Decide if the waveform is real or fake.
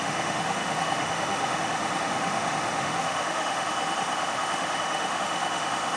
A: fake